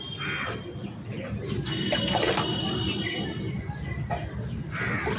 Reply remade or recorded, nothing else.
recorded